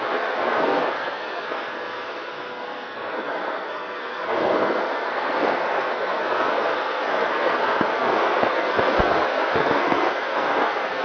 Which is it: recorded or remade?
remade